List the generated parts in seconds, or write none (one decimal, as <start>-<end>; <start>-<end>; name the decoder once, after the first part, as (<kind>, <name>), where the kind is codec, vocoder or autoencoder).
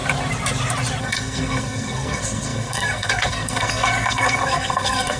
1.0-5.2 (codec, SNAC)